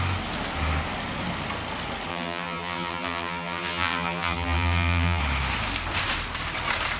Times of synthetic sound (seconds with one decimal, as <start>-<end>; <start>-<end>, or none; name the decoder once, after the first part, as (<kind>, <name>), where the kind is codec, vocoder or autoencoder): 2.1-5.2 (vocoder, BigVGAN v2)